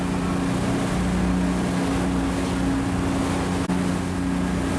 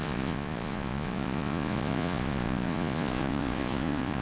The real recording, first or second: first